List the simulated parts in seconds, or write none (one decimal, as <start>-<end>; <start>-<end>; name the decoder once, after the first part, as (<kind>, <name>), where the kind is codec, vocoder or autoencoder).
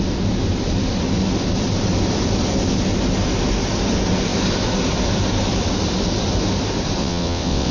7.0-7.7 (vocoder, WaveNeXt)